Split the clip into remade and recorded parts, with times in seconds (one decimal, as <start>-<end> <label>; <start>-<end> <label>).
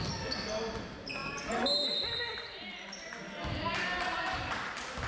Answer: 0.0-5.1 recorded